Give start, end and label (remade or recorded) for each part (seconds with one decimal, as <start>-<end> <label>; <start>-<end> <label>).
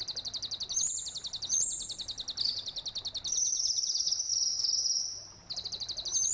0.0-6.3 recorded